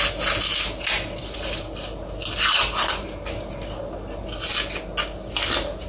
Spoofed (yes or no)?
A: no